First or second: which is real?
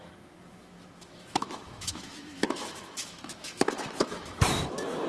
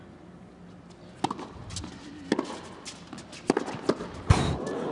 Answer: second